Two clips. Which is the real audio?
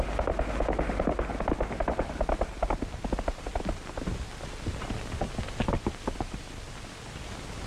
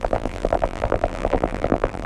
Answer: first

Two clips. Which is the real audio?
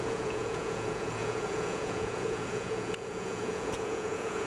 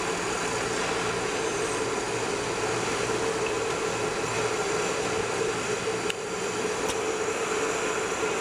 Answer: second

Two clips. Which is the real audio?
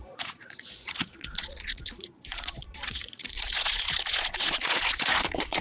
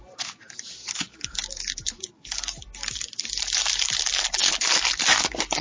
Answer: second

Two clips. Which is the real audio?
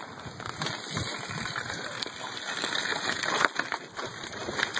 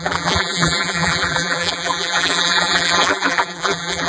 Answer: first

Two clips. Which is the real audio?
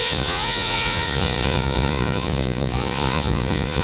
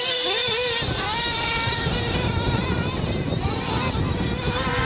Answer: second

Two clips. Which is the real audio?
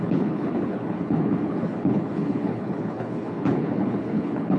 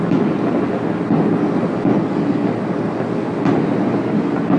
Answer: second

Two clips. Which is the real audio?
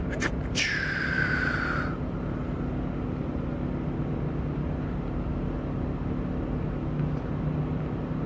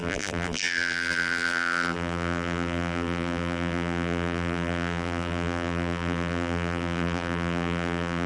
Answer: first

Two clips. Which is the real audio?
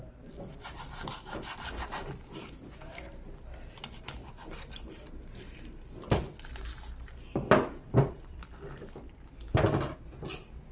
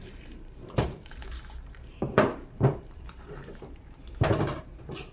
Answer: first